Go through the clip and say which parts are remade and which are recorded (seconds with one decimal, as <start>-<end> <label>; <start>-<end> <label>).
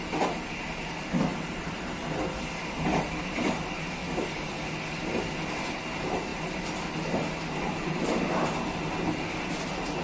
0.0-1.3 recorded; 1.3-2.0 remade; 2.0-4.0 recorded; 4.0-4.7 remade; 4.7-6.3 recorded; 6.3-7.3 remade; 7.3-10.0 recorded